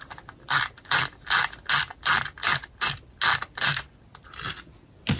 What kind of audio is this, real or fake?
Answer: real